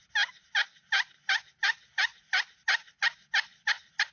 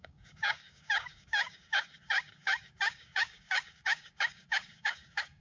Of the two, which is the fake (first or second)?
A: second